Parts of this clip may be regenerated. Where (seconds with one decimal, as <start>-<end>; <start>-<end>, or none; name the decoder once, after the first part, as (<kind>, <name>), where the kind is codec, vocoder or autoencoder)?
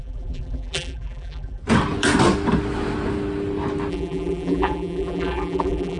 0.0-1.6 (vocoder, BigVGAN v2); 3.9-6.0